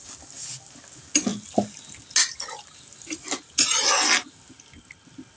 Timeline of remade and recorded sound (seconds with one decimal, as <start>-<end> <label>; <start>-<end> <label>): 0.0-5.4 recorded

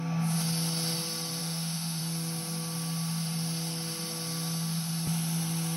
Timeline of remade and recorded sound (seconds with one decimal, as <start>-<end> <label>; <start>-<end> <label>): 0.0-1.4 recorded; 1.4-2.0 remade; 2.0-5.8 recorded

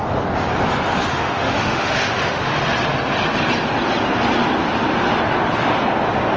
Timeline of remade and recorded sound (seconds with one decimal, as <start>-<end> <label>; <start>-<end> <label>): 0.0-1.1 recorded; 1.1-2.5 remade; 2.5-6.4 recorded

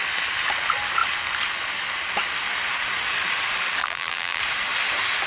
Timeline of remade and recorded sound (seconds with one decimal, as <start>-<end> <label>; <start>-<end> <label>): 0.0-3.8 recorded; 3.8-4.4 remade; 4.4-5.3 recorded